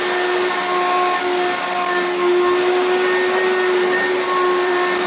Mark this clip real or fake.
real